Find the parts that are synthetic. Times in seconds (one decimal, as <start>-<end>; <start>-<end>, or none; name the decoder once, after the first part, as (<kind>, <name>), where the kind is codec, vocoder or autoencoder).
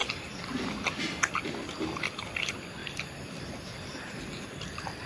2.0-5.1 (vocoder, BigVGAN v2)